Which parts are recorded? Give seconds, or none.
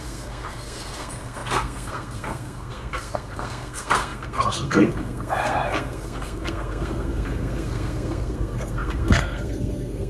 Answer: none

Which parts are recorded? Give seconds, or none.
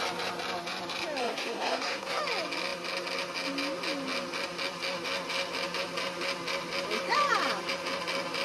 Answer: 0.0-1.2; 2.2-8.4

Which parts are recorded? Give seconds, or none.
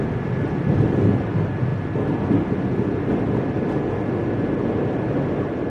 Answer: 0.0-5.7